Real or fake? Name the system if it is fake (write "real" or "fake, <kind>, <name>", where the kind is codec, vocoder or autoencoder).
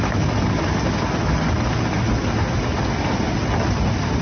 real